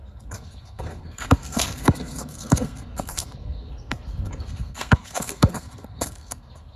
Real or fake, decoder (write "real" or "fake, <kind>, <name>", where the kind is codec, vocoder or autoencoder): fake, codec, SNAC